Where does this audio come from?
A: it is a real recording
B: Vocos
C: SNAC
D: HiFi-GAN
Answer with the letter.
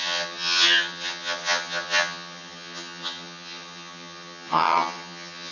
D